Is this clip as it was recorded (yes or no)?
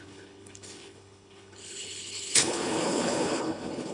no